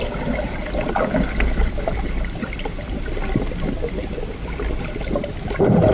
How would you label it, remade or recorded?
recorded